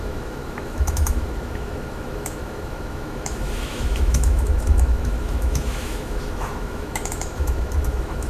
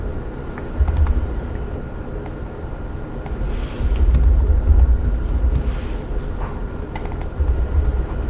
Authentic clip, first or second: second